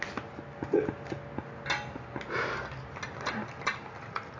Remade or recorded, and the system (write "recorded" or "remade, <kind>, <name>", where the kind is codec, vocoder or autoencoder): recorded